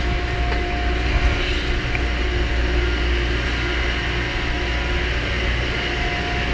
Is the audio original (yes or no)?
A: yes